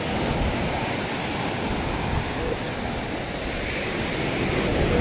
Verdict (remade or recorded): recorded